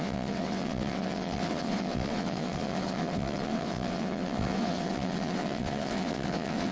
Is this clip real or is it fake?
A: fake